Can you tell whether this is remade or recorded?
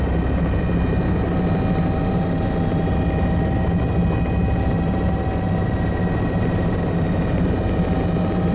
recorded